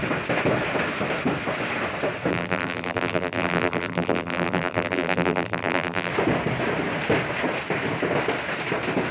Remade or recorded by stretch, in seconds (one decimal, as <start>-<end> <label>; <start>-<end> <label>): 0.0-2.3 recorded; 2.3-6.1 remade; 6.1-9.1 recorded